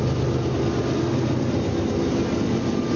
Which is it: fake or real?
real